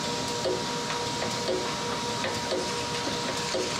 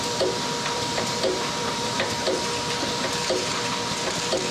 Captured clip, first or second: first